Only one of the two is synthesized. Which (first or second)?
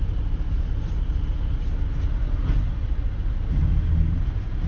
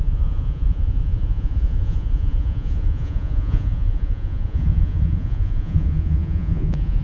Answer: second